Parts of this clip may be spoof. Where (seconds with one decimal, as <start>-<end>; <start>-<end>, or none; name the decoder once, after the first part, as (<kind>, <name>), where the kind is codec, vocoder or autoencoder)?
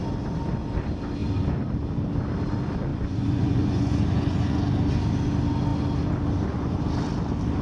2.9-4.6 (vocoder, Vocos)